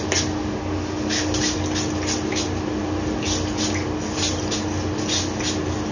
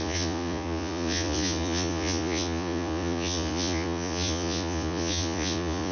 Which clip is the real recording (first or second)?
first